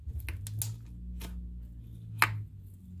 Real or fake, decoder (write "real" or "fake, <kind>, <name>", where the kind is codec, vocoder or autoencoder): real